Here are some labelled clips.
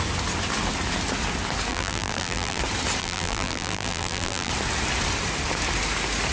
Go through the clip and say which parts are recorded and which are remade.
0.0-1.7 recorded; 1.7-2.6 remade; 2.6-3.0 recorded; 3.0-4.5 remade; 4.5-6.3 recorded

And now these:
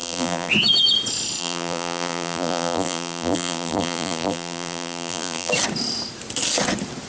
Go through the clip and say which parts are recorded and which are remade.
0.0-0.5 remade; 0.5-1.4 recorded; 1.4-5.5 remade; 5.5-7.1 recorded

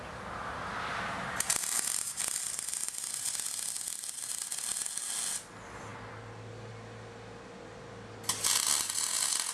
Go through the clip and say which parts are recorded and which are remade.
0.0-9.5 recorded

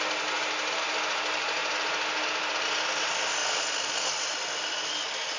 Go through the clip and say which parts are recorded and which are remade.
0.0-5.4 recorded

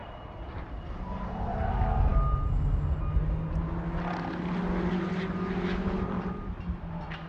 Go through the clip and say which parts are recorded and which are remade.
0.0-1.5 remade; 1.5-7.3 recorded

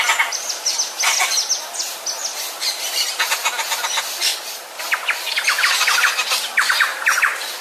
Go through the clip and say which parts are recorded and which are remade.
0.0-7.6 recorded